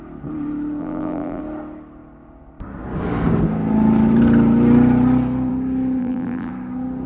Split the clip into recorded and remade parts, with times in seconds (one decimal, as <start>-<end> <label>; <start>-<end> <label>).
0.0-0.8 recorded; 0.8-1.4 remade; 1.4-6.0 recorded; 6.0-6.5 remade; 6.5-7.1 recorded